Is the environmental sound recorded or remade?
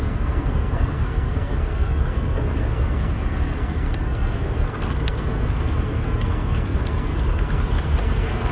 remade